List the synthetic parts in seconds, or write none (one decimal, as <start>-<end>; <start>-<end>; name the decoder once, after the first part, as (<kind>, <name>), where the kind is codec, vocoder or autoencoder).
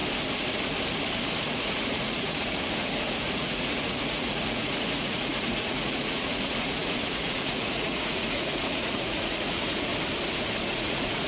1.5-9.9 (vocoder, Vocos); 10.6-11.3